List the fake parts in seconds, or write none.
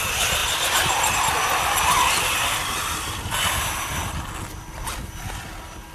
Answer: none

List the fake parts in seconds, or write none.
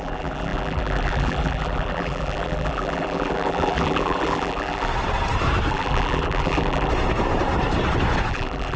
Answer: 0.0-4.9 (vocoder, BigVGAN v2); 5.7-6.9; 8.3-8.8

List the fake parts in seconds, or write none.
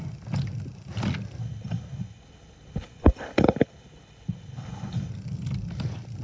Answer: 1.4-5.1 (codec, HILCodec)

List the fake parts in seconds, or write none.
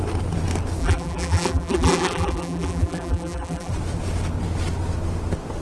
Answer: 0.8-3.7 (vocoder, BigVGAN v2)